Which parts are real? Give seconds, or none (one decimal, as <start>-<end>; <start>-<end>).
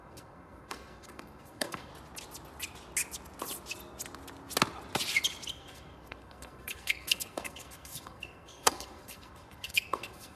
1.9-5.5